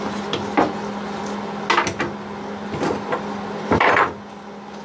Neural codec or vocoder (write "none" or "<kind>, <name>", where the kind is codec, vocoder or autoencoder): none